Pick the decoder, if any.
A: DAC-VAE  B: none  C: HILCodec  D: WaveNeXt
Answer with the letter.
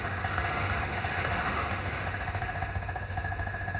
A